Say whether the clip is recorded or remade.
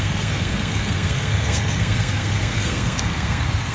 remade